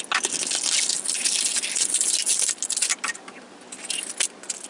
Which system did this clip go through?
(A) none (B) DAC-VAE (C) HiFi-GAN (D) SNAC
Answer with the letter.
A